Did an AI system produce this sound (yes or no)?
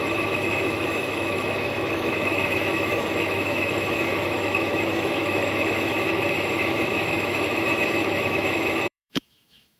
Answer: yes